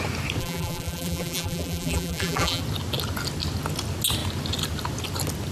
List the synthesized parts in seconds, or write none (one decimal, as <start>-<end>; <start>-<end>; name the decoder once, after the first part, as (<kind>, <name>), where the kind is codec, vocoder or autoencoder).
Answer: 0.4-2.6 (vocoder, BigVGAN v2)